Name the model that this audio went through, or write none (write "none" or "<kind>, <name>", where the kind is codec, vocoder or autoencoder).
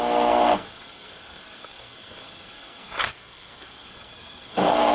codec, SNAC